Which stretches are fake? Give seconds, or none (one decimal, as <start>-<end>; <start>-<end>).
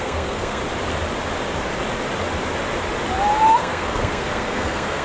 0.0-0.6; 3.6-5.0